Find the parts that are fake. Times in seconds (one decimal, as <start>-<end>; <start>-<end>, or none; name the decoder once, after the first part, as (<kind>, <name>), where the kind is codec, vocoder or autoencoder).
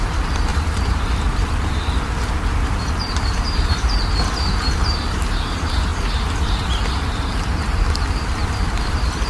0.0-5.9 (vocoder, BigVGAN v2); 8.2-9.3